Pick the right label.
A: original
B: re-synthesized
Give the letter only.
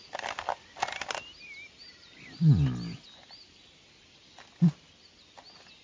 A